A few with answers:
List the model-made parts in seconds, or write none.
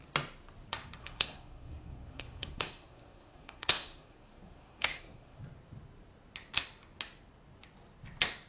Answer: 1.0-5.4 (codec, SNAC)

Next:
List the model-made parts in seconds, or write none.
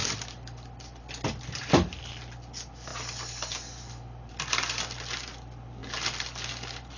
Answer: none